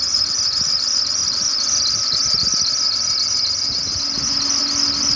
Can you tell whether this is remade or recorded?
recorded